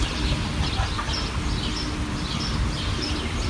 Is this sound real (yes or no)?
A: yes